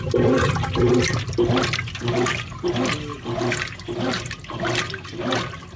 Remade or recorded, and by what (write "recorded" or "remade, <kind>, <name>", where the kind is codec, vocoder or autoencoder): recorded